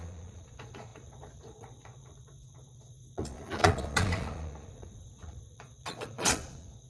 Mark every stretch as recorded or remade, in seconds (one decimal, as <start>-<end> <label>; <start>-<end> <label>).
0.0-6.9 remade